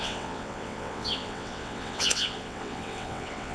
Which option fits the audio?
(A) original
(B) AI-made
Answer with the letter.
B